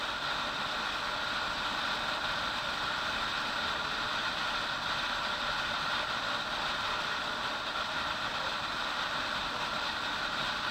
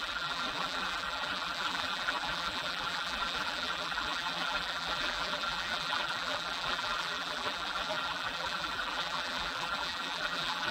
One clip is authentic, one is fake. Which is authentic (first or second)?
first